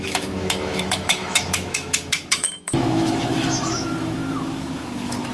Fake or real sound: fake